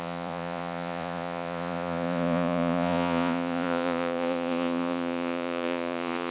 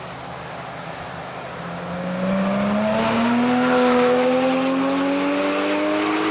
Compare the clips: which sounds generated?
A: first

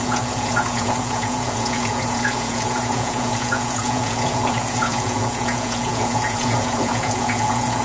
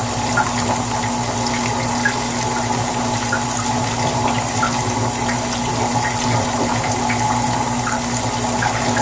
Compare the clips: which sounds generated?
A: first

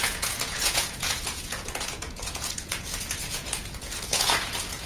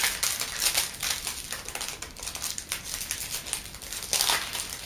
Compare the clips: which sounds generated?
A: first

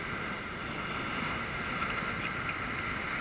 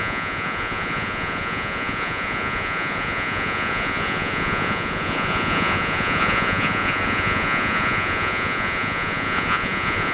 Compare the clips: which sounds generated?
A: second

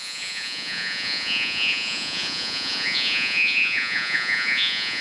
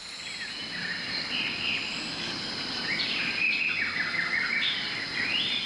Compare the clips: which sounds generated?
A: first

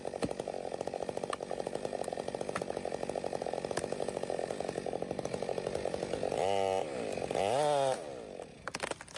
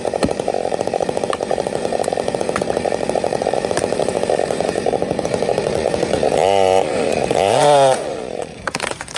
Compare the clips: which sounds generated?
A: second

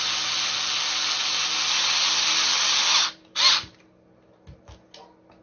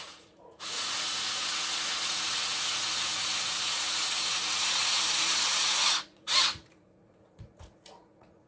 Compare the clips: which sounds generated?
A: second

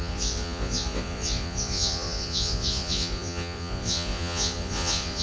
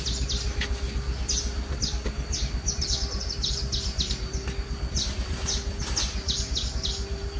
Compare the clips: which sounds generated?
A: first